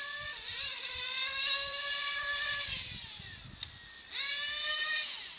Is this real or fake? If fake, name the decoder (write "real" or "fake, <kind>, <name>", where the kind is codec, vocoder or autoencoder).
fake, vocoder, BigVGAN v2